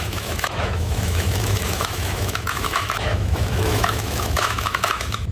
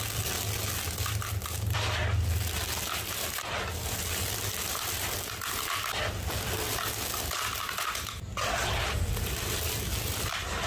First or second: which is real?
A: second